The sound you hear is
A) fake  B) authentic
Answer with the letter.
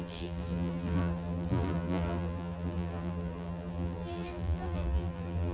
A